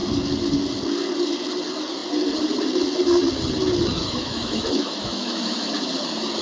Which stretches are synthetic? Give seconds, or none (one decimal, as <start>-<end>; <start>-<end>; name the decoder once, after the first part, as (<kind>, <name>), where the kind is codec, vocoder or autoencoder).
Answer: 4.0-5.7 (autoencoder, DAC-VAE)